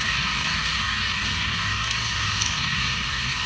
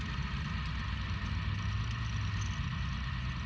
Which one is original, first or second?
second